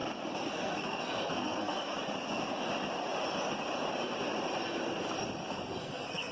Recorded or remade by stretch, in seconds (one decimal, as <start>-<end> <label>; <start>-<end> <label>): 0.0-0.5 recorded; 0.5-2.0 remade; 2.0-5.8 recorded; 5.8-6.3 remade